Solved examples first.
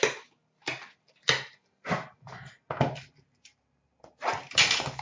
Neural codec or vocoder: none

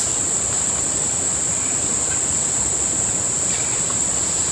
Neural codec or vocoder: none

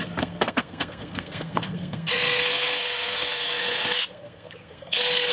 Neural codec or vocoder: codec, SNAC